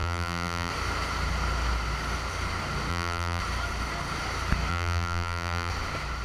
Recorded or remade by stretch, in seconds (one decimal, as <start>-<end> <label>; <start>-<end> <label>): 0.0-0.7 remade; 0.7-2.9 recorded; 2.9-3.4 remade; 3.4-4.7 recorded; 4.7-5.7 remade; 5.7-6.2 recorded